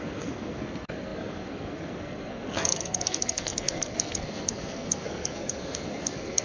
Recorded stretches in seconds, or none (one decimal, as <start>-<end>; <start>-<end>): none